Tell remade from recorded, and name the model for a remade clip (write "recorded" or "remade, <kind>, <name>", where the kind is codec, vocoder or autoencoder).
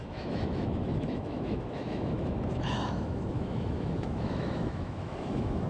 remade, autoencoder, DAC-VAE